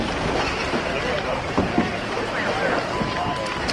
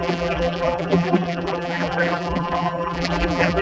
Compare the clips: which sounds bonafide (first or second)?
first